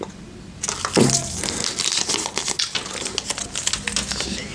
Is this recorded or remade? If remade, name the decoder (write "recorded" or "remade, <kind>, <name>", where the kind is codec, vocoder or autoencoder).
recorded